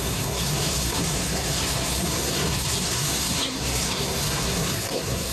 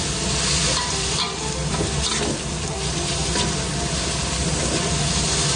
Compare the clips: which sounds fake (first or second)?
first